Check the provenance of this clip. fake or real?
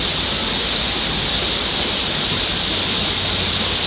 real